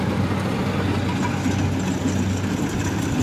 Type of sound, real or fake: real